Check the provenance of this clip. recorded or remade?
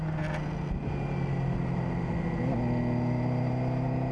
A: recorded